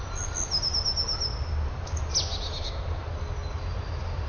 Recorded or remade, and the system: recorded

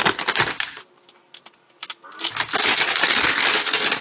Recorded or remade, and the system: recorded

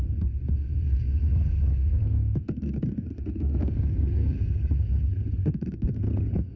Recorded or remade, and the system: remade, codec, SNAC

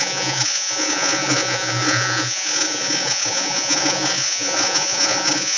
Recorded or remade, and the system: remade, vocoder, Vocos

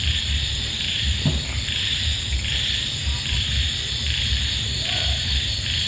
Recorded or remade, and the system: remade, vocoder, BigVGAN v2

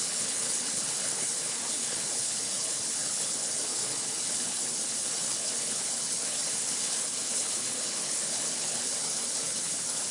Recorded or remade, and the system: remade, codec, HILCodec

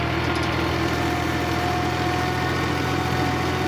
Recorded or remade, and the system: recorded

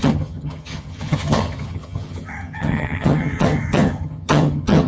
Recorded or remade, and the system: remade, vocoder, HiFi-GAN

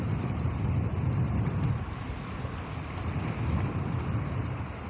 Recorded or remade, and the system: recorded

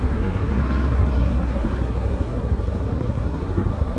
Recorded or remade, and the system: remade, codec, SNAC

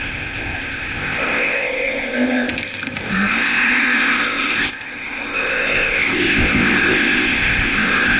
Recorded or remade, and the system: remade, codec, ZipCodec